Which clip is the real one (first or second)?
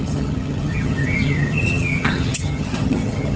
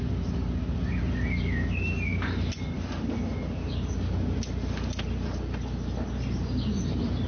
second